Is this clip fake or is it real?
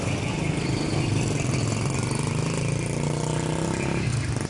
real